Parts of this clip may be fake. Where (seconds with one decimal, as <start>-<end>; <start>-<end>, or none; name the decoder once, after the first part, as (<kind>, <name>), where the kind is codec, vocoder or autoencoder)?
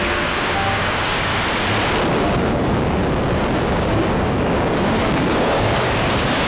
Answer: 0.0-1.3 (codec, DAC); 2.2-3.0; 3.6-6.5